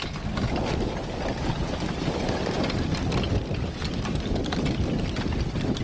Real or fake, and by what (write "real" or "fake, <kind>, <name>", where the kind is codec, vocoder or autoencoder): real